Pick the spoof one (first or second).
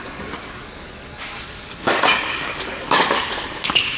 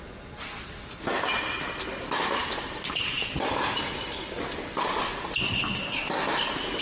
first